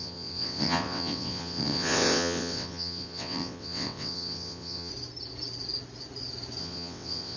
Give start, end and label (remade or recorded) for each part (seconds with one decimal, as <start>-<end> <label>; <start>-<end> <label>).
0.0-4.9 remade; 4.9-6.6 recorded; 6.6-7.4 remade